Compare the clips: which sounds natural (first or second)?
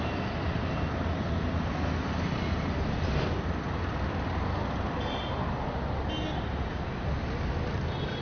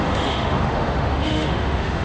first